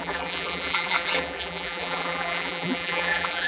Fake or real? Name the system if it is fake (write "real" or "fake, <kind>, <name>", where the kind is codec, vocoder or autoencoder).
fake, vocoder, BigVGAN v2